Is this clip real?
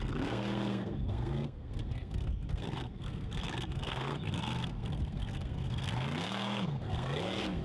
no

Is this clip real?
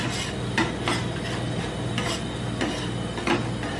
yes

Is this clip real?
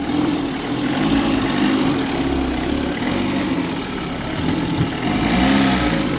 yes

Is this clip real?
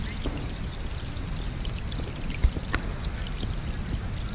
yes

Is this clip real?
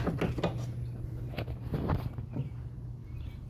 yes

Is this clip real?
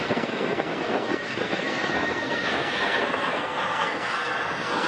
no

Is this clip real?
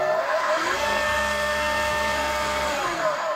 no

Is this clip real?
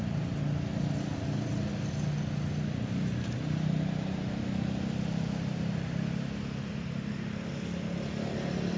yes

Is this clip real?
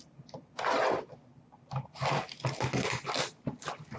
yes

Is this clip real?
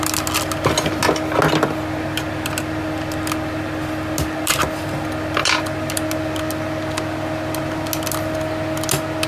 yes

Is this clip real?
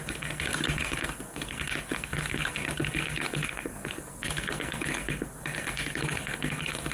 no